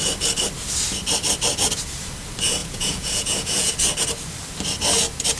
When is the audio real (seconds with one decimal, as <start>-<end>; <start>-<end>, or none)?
0.0-2.6; 3.7-5.4